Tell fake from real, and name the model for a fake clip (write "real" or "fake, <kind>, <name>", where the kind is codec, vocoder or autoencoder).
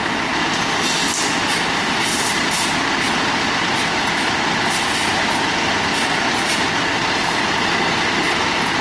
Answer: real